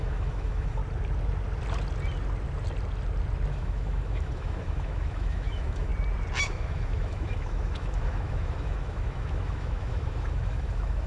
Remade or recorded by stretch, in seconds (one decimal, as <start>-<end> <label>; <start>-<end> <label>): 0.0-0.8 remade; 0.8-3.5 recorded; 3.5-5.9 remade; 5.9-6.4 recorded; 6.4-11.1 remade